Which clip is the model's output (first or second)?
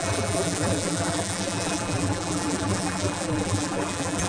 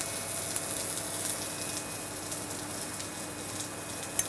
first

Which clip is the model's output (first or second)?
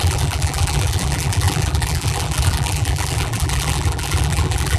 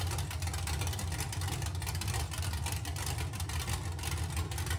first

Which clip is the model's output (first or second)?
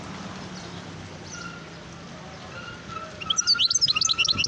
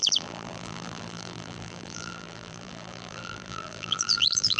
second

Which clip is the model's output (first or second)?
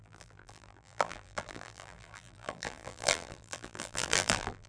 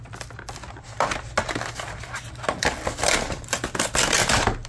first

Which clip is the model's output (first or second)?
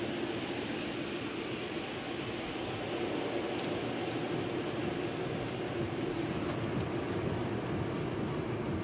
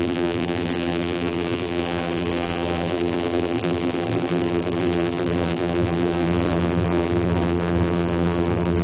second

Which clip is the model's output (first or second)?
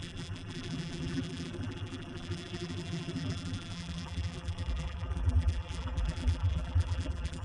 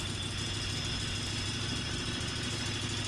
first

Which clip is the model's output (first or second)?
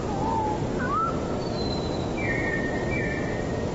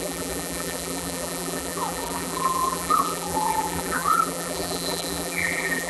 second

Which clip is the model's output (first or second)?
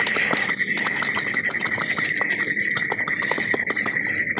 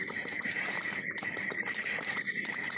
second